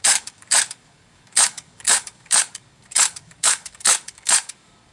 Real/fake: fake